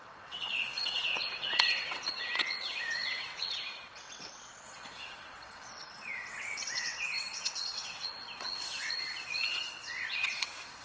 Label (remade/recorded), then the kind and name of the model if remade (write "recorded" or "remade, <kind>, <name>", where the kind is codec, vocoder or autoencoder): remade, vocoder, WaveNeXt